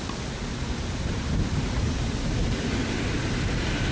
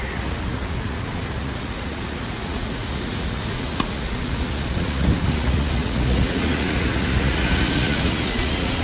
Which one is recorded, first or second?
first